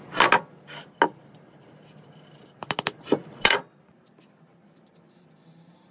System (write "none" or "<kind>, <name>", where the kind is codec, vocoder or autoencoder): none